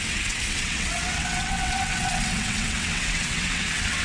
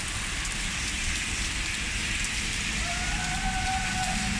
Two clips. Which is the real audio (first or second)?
second